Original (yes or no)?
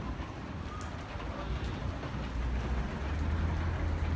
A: yes